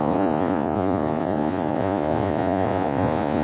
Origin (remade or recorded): remade